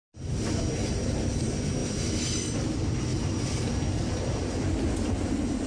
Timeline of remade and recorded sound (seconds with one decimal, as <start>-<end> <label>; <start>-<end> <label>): 0.0-5.7 recorded